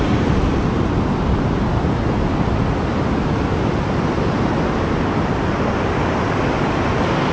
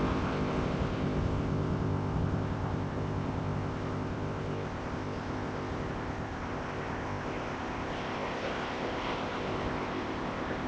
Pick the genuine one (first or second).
first